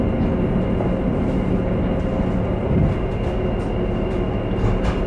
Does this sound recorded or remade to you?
recorded